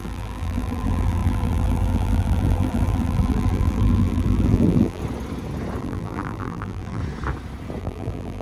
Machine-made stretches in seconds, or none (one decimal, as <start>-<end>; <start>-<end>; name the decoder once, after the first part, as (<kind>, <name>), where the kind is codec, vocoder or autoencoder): 0.0-5.0 (vocoder, BigVGAN v2); 5.8-7.0; 7.8-8.4